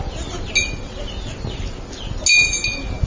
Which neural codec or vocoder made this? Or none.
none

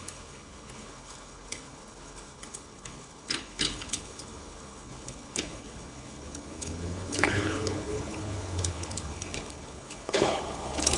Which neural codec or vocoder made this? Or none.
codec, HILCodec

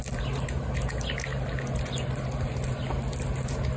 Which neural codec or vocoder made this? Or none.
none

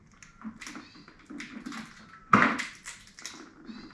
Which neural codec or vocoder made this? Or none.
none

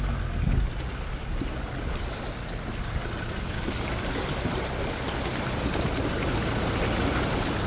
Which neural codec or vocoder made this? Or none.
none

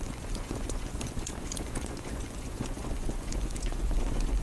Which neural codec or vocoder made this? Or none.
vocoder, Vocos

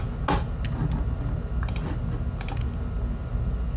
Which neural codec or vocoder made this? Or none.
none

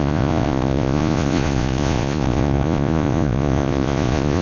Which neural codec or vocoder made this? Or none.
vocoder, Vocos